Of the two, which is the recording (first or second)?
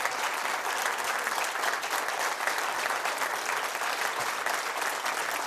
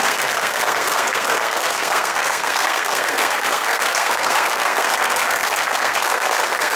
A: first